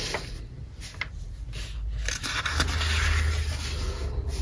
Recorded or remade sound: recorded